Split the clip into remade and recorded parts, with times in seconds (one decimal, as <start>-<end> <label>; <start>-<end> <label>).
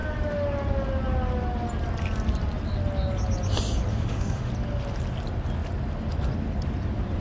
0.0-3.9 recorded; 3.9-4.5 remade; 4.5-7.2 recorded